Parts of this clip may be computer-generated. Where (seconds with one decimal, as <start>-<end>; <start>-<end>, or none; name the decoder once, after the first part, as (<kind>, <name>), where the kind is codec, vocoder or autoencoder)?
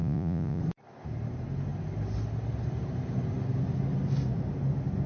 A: 0.0-0.6 (vocoder, Vocos)